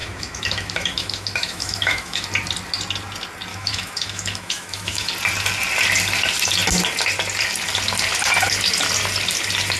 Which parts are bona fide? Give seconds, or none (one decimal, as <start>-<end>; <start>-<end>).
2.3-3.5; 5.1-9.8